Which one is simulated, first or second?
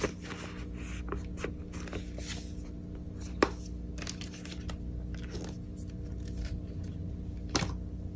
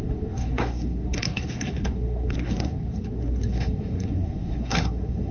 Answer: second